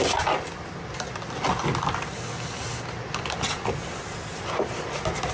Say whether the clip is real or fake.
real